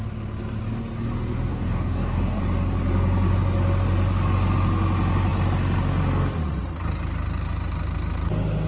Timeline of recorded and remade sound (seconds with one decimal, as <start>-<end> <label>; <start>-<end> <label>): 0.0-1.5 recorded; 1.5-2.4 remade; 2.4-8.7 recorded